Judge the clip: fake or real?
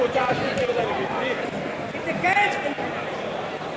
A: real